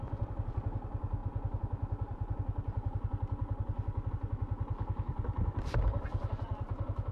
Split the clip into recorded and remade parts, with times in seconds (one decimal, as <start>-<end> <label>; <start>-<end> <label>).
0.0-5.1 recorded; 5.1-6.3 remade; 6.3-7.1 recorded